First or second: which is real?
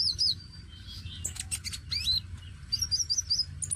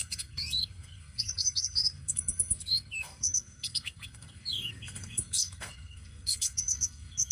first